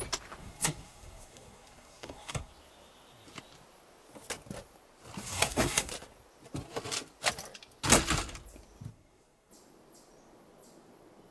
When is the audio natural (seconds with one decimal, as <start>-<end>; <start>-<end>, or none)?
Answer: 0.0-0.4; 2.5-5.2; 5.9-8.9; 9.5-11.3